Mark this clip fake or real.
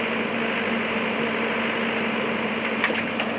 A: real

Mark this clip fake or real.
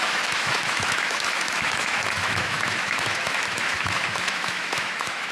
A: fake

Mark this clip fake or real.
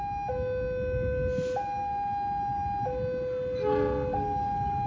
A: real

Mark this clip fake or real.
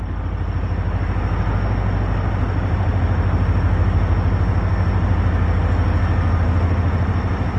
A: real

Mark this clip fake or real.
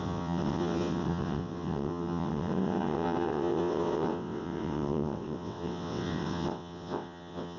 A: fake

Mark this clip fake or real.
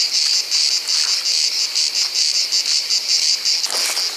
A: real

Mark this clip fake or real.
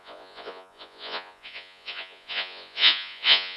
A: fake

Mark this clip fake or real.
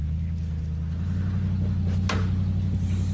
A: real